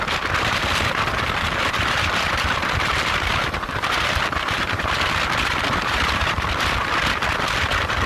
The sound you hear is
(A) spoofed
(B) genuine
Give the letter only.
A